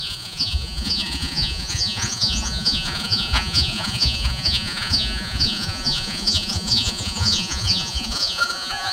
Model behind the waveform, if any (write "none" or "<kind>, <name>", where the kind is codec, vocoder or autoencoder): vocoder, Vocos